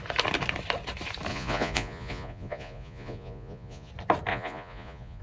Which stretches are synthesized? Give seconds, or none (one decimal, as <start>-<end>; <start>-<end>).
1.3-3.9; 4.3-5.2